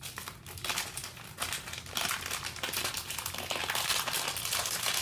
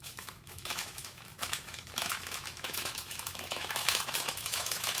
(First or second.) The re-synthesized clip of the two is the second